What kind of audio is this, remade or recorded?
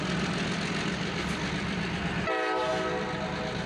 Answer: recorded